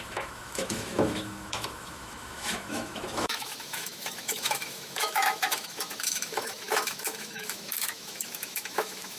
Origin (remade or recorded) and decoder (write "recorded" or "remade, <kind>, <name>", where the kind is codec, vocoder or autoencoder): remade, autoencoder, DAC-VAE